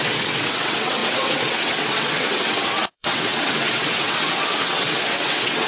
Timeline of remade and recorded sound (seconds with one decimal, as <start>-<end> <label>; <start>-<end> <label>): 0.0-5.7 remade